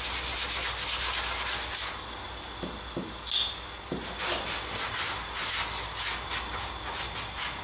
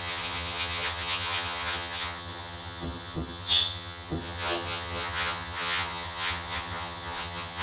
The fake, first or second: second